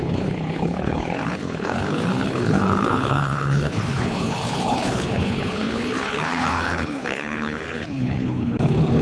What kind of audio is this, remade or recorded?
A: remade